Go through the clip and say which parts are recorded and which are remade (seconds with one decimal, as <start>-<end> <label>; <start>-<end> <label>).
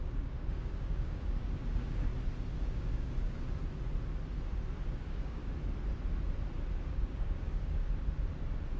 0.0-2.1 remade; 2.1-2.6 recorded; 2.6-3.6 remade; 3.6-4.9 recorded; 4.9-5.4 remade; 5.4-6.8 recorded; 6.8-7.8 remade; 7.8-8.8 recorded